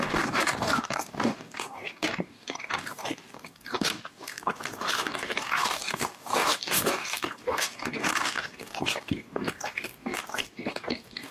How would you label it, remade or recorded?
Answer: remade